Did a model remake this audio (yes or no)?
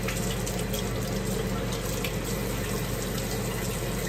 no